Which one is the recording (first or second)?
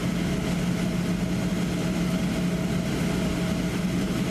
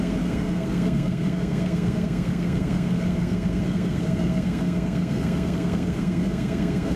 first